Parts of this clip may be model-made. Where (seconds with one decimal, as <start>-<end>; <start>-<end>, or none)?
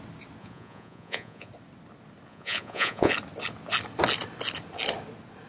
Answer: 0.4-1.5; 2.3-3.1